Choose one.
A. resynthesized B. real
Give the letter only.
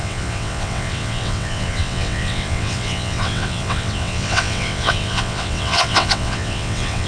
A